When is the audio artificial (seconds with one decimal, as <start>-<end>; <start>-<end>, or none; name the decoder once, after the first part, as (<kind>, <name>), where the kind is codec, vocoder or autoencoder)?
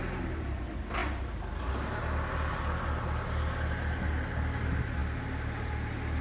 none